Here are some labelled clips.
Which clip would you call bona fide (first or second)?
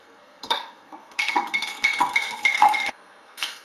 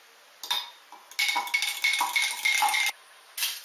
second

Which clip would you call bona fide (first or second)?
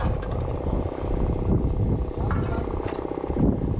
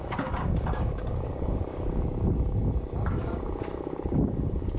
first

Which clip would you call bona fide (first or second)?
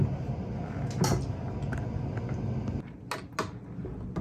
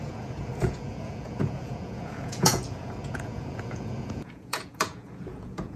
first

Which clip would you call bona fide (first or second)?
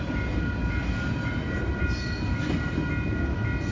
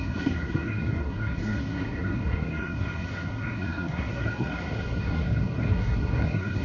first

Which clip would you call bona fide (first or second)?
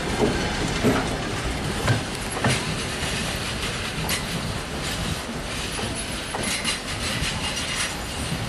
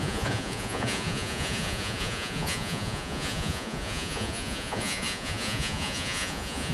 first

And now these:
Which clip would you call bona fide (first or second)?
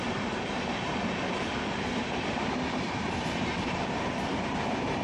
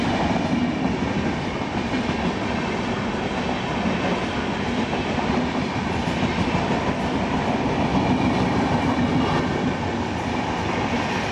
second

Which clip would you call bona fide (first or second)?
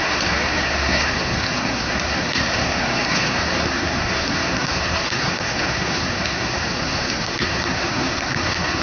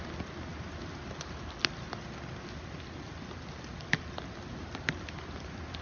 second